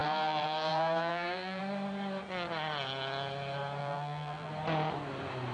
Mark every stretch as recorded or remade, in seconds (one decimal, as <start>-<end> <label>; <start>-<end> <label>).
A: 0.0-1.6 remade; 1.6-3.8 recorded; 3.8-4.5 remade; 4.5-5.5 recorded